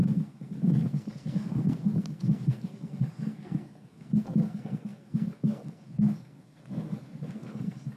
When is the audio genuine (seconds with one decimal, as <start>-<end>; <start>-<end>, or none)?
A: none